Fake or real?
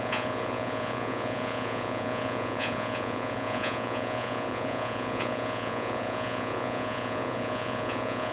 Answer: fake